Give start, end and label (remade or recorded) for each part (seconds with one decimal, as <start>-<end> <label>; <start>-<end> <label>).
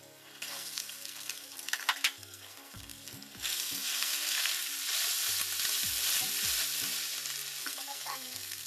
0.0-4.5 remade; 4.5-7.6 recorded; 7.6-8.7 remade